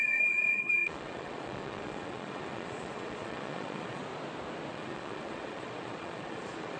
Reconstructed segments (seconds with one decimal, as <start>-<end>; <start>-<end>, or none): 0.0-4.0; 4.7-6.8